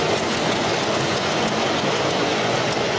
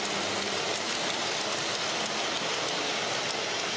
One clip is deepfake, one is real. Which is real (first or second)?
second